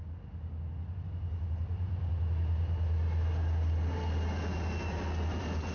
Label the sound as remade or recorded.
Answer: recorded